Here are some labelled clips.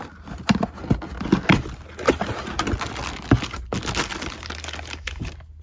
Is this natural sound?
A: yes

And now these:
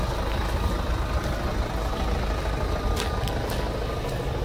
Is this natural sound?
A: yes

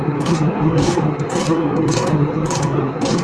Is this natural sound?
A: no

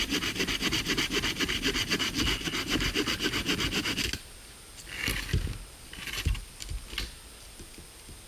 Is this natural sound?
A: yes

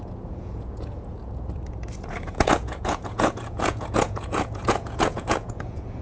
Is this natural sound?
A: no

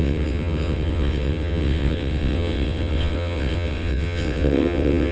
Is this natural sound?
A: no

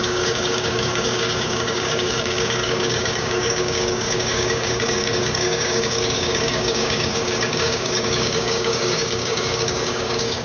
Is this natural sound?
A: no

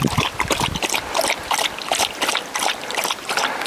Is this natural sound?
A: yes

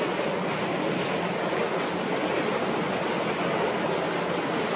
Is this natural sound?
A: yes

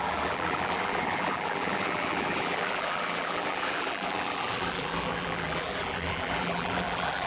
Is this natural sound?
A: no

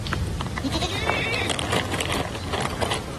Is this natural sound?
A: yes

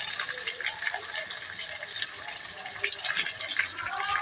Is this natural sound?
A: yes